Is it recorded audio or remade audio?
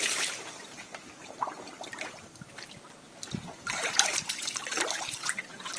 remade